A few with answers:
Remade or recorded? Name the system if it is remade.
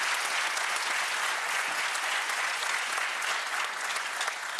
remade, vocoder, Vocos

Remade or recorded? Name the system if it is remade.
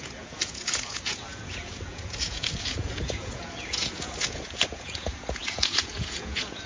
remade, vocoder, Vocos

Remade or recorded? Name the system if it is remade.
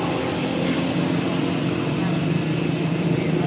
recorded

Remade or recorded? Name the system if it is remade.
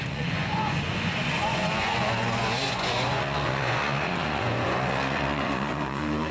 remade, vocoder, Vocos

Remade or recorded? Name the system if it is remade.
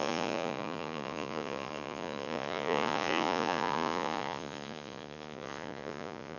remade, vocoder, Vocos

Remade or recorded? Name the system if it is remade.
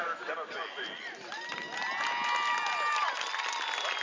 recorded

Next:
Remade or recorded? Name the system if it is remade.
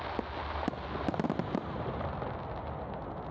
recorded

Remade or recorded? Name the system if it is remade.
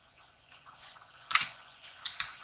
remade, vocoder, Vocos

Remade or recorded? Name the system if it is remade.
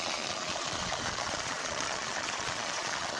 remade, vocoder, Vocos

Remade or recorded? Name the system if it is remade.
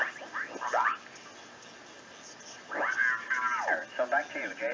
recorded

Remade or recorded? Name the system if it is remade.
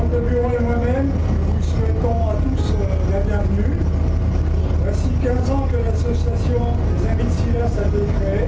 recorded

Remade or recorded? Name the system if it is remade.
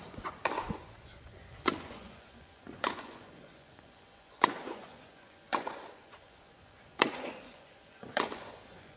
remade, vocoder, Vocos